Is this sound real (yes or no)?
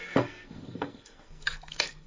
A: no